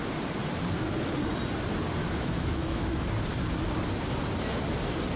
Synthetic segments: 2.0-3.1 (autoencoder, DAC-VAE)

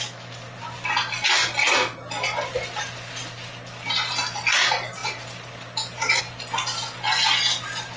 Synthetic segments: none

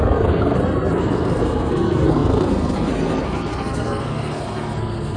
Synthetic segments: 0.0-5.2 (codec, SNAC)

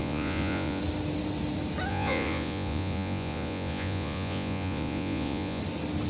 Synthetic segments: 0.0-0.8 (vocoder, Vocos); 1.9-5.6

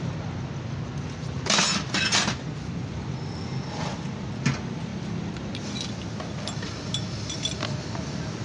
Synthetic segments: none

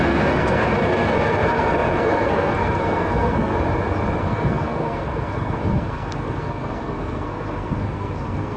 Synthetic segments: 0.0-3.5 (codec, SNAC); 4.2-8.6

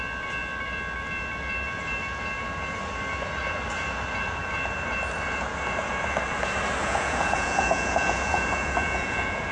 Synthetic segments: 6.8-9.5 (vocoder, Vocos)